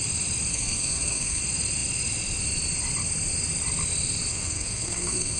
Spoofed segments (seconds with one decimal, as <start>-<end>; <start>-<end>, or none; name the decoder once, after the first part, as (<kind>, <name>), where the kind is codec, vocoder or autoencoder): 0.5-1.4 (codec, SNAC); 4.3-5.4